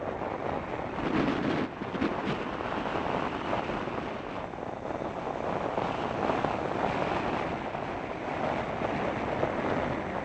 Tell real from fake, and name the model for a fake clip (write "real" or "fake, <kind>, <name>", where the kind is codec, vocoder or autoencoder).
real